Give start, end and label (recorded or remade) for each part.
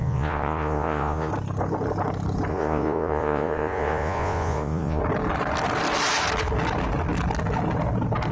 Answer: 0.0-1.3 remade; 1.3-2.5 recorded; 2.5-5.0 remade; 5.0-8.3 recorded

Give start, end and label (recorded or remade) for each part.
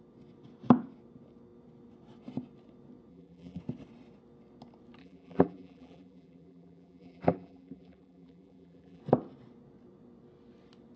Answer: 0.0-3.1 recorded; 3.1-3.6 remade; 3.6-5.0 recorded; 5.0-9.0 remade; 9.0-11.0 recorded